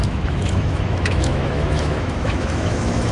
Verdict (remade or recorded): remade